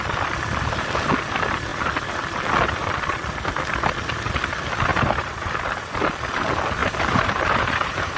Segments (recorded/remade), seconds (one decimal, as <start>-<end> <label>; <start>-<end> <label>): 0.0-4.9 recorded; 4.9-5.6 remade; 5.6-6.8 recorded; 6.8-8.2 remade